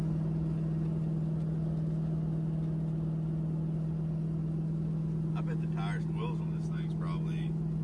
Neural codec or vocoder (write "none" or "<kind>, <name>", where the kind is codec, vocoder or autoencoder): none